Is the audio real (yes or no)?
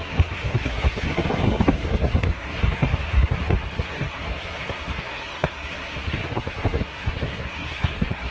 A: no